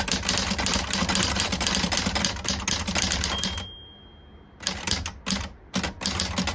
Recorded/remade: recorded